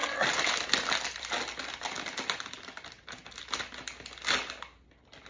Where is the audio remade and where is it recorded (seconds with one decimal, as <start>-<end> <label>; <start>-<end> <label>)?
0.0-5.3 recorded